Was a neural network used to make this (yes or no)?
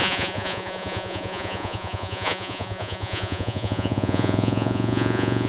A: yes